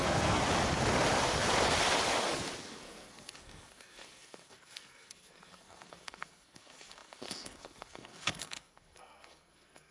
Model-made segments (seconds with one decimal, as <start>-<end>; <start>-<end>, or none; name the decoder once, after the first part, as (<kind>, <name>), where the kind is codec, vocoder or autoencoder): 0.0-0.4 (codec, SNAC); 2.6-9.9